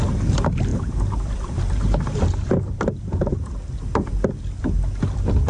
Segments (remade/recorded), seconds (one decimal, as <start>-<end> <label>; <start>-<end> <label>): 0.0-0.7 recorded; 0.7-3.3 remade; 3.3-5.5 recorded